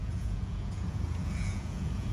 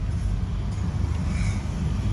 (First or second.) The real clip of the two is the second